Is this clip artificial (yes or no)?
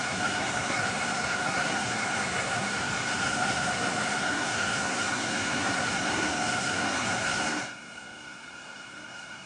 yes